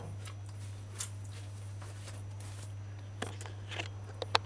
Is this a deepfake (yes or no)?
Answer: no